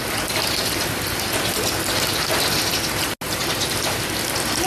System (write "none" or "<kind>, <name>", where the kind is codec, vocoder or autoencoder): none